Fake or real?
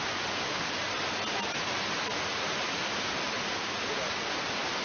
real